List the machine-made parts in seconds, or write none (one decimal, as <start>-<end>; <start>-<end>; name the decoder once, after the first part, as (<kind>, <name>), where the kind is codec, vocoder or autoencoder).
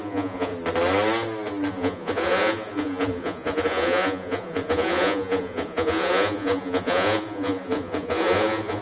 0.0-0.5 (vocoder, Vocos); 1.7-8.8